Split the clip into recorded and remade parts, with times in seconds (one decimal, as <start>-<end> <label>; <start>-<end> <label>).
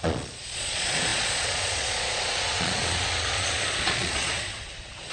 0.0-5.1 remade